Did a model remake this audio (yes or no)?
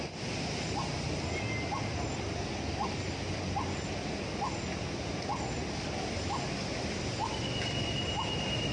no